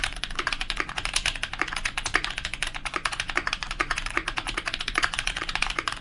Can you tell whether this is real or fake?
fake